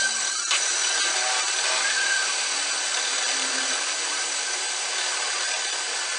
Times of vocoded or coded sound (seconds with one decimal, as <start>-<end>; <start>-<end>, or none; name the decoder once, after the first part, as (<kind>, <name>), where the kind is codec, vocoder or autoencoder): none